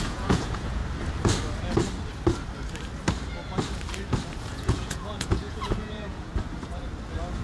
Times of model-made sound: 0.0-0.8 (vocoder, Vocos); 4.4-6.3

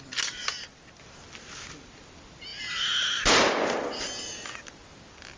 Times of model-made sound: none

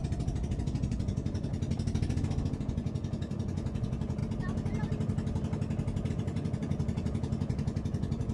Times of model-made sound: 0.0-1.5 (vocoder, Vocos); 2.6-4.2; 6.1-8.3

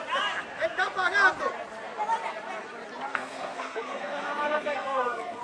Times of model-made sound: 3.1-5.4 (codec, SNAC)

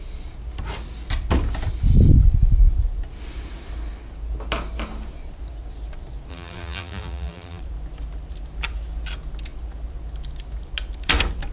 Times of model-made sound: 6.3-7.6 (vocoder, BigVGAN v2)

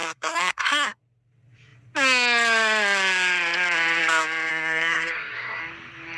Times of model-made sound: 0.0-1.0 (codec, SNAC); 4.5-5.6

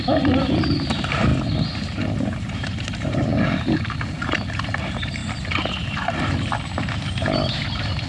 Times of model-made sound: 0.0-1.3 (vocoder, BigVGAN v2); 2.0-3.3; 4.2-5.2; 6.1-8.1